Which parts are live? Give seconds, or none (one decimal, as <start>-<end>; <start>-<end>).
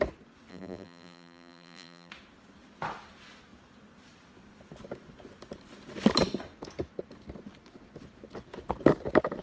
0.0-0.5; 2.1-9.4